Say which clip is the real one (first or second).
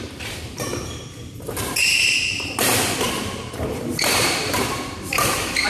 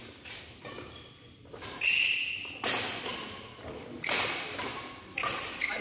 second